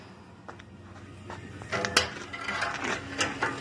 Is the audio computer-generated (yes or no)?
no